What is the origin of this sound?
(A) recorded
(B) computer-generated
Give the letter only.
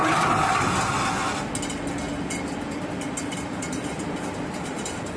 A